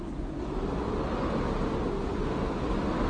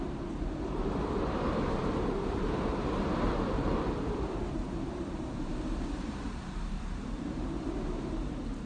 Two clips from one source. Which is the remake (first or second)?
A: second